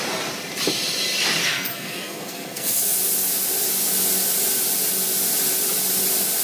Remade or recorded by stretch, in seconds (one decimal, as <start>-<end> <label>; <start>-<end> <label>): 0.0-1.4 recorded; 1.4-3.0 remade; 3.0-6.4 recorded